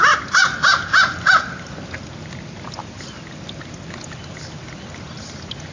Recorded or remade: recorded